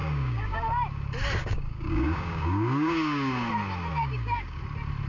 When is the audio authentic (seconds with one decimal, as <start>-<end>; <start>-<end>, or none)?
0.6-1.4; 3.5-3.9; 4.6-5.1